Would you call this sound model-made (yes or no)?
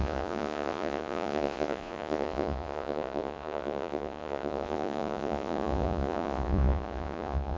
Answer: yes